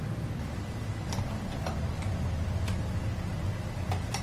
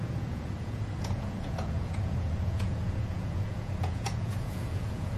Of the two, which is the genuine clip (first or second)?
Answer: first